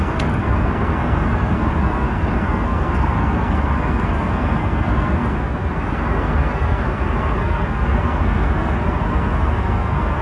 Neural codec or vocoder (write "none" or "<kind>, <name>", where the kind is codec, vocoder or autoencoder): codec, SNAC